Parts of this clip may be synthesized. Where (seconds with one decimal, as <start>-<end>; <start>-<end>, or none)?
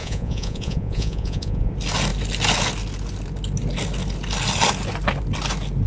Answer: 0.0-1.7